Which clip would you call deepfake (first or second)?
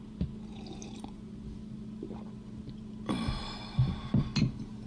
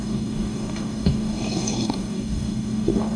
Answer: second